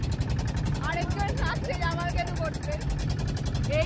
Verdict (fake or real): real